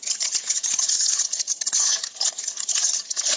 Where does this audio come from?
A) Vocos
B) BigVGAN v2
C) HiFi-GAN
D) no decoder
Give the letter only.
C